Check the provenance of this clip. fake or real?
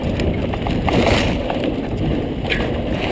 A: real